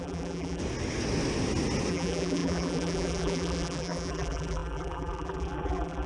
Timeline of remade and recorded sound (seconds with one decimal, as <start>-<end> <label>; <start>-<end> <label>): 0.0-0.6 remade; 0.6-1.9 recorded; 1.9-6.1 remade